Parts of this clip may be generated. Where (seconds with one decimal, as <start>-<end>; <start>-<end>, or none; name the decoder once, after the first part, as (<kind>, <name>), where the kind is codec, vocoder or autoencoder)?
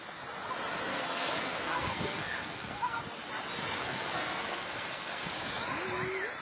0.9-3.0 (codec, SNAC); 3.8-5.3